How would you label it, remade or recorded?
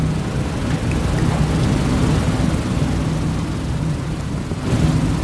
recorded